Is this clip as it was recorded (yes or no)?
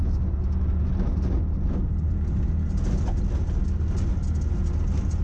yes